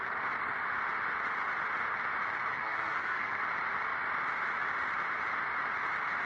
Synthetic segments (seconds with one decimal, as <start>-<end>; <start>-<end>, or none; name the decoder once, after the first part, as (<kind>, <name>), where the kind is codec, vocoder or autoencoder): 2.5-3.4 (codec, SNAC)